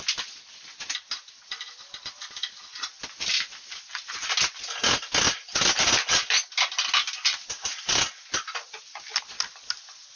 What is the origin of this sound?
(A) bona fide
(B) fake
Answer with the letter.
A